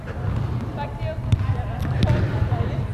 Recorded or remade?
recorded